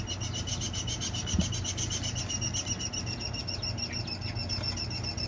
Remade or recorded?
recorded